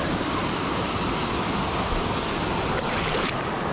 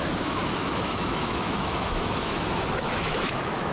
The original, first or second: first